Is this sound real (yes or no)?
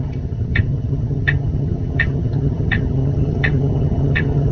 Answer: no